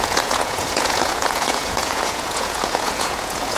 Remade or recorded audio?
remade